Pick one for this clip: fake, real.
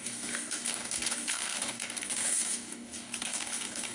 fake